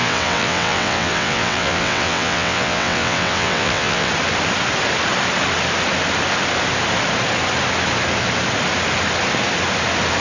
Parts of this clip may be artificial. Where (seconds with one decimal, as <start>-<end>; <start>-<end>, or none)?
0.0-4.1